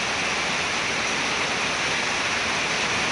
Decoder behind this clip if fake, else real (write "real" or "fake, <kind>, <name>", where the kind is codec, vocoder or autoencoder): real